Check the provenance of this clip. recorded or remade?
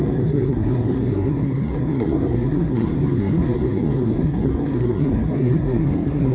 remade